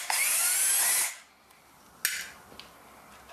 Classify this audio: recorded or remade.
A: recorded